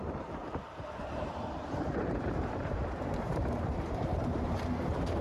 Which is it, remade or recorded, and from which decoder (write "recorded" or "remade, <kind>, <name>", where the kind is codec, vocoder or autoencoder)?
remade, vocoder, BigVGAN v2